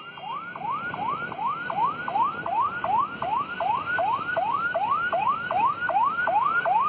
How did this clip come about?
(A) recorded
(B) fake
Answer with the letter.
A